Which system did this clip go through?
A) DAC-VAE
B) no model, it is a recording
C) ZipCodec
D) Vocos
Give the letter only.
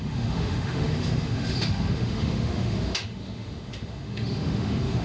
A